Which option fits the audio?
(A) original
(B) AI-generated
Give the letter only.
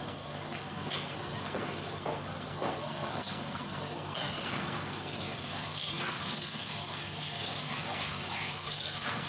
B